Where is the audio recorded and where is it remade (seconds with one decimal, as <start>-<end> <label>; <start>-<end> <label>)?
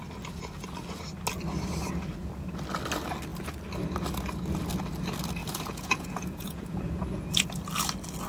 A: 0.0-5.4 recorded; 5.4-7.5 remade; 7.5-8.3 recorded